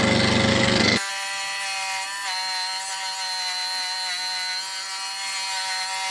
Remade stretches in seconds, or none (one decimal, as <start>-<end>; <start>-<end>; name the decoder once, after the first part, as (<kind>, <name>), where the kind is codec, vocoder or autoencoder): 0.5-1.1 (codec, SNAC)